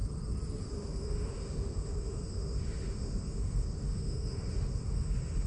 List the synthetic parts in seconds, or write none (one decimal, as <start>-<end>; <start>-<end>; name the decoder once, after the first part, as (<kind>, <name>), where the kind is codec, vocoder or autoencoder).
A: 0.6-5.5 (autoencoder, DAC-VAE)